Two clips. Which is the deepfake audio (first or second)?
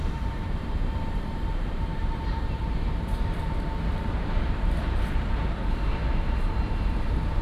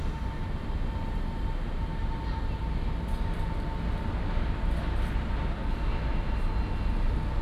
first